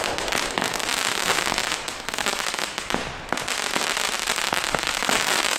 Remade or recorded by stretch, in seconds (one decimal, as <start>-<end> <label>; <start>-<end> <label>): 0.0-3.0 remade; 3.0-4.3 recorded; 4.3-5.6 remade